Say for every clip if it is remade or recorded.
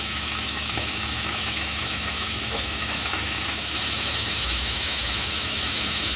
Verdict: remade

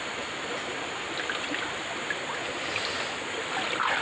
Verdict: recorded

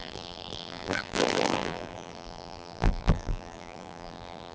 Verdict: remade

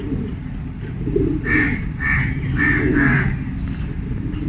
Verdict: recorded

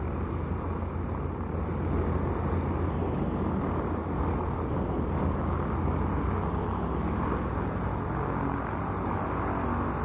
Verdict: recorded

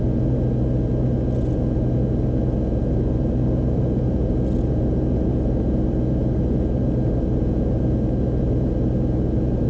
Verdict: recorded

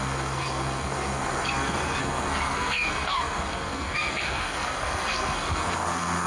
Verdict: remade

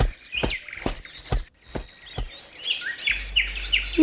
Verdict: recorded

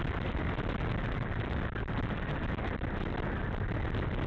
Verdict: recorded